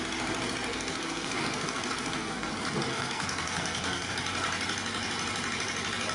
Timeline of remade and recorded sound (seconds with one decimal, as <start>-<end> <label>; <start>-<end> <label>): 0.0-0.7 recorded; 0.7-2.5 remade; 2.5-2.9 recorded; 2.9-4.1 remade; 4.1-6.1 recorded